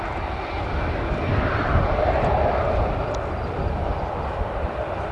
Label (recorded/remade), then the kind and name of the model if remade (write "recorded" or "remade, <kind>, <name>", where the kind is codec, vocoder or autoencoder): recorded